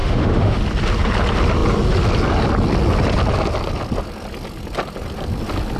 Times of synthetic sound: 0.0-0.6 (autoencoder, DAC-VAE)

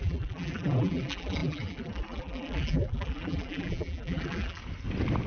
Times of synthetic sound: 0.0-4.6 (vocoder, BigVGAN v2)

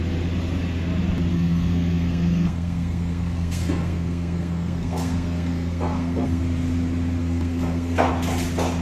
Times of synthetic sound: 1.3-6.4 (codec, SNAC); 7.2-8.1

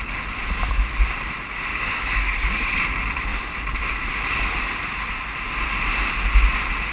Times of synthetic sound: 1.7-2.5 (codec, DAC)

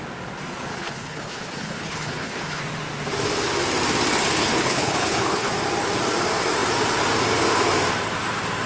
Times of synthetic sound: 0.7-2.6 (codec, HILCodec); 4.4-5.5

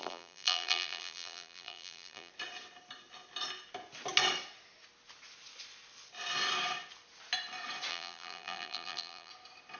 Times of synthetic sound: 0.0-2.3 (vocoder, BigVGAN v2); 7.9-9.3

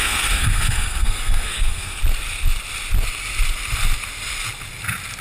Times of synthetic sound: 0.0-2.0 (codec, SNAC)

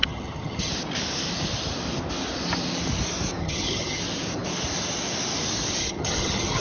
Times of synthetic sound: 0.0-0.7 (vocoder, HiFi-GAN); 3.4-4.0; 5.8-6.6